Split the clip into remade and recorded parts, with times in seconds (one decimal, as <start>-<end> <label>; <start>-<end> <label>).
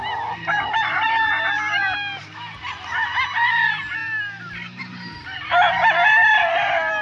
0.0-7.0 recorded